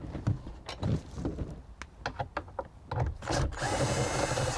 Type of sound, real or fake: real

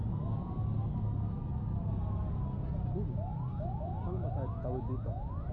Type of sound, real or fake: real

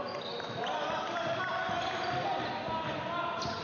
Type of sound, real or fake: real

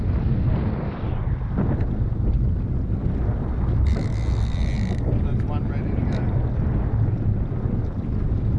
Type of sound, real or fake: real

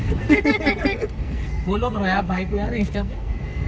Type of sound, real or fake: fake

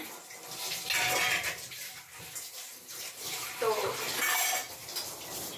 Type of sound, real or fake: real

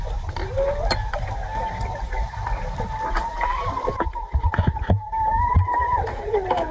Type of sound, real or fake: real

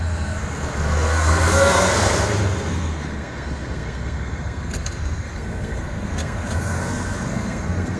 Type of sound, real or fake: fake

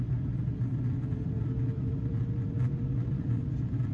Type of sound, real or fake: fake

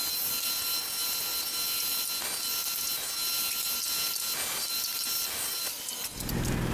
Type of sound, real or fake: real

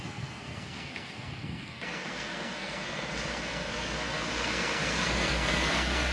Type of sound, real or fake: fake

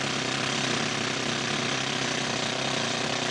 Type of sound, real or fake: real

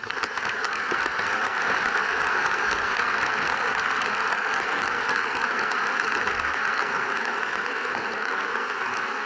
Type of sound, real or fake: fake